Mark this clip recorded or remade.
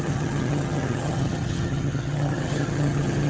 remade